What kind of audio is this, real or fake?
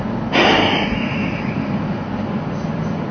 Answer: real